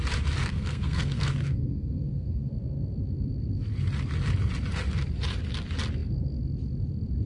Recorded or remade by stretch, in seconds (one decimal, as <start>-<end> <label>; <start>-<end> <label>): 0.0-0.4 recorded; 0.4-2.5 remade; 2.5-7.3 recorded